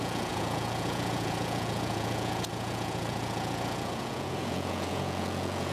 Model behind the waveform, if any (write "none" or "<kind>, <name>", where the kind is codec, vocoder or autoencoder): vocoder, Vocos